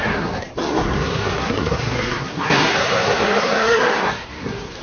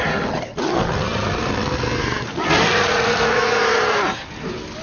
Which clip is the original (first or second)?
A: second